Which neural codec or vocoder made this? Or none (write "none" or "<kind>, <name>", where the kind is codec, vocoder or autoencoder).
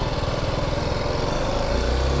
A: none